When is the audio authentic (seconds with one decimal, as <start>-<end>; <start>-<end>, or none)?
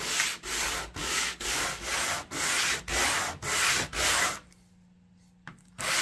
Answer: 0.0-1.0; 1.6-6.0